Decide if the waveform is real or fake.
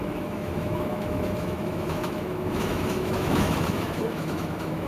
fake